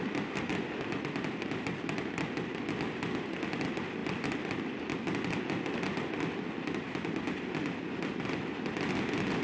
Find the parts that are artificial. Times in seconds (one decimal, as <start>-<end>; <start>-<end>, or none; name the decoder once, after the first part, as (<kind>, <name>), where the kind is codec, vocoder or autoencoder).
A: none